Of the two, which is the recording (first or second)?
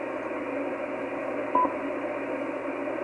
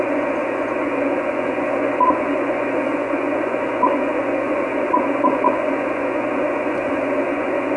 first